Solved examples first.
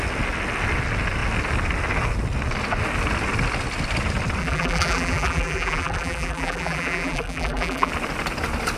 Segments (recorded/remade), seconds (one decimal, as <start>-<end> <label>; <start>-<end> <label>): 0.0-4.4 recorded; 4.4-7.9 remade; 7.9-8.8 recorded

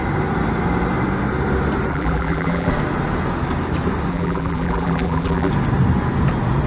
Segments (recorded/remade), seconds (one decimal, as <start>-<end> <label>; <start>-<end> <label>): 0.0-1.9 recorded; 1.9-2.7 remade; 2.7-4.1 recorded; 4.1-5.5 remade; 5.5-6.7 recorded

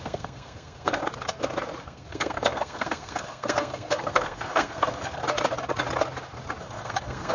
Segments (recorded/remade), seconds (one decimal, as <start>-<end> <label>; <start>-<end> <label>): 0.0-1.0 remade; 1.0-1.8 recorded; 1.8-5.2 remade; 5.2-6.6 recorded; 6.6-7.3 remade

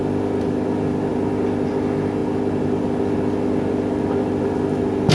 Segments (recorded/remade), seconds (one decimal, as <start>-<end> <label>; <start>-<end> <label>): 0.0-5.1 recorded